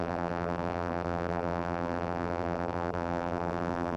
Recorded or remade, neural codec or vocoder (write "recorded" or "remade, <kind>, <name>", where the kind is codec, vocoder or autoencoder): remade, vocoder, BigVGAN v2